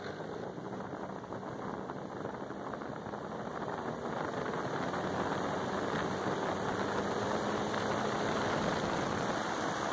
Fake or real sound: real